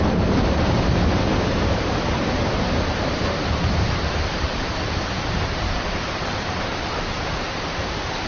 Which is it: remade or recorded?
remade